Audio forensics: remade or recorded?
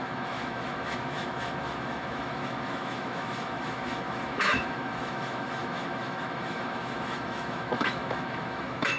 remade